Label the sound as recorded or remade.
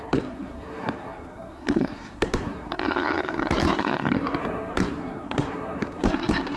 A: remade